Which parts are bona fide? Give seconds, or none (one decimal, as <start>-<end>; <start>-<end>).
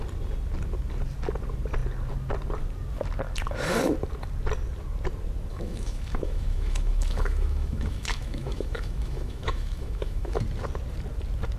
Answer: 0.0-5.5; 10.4-11.6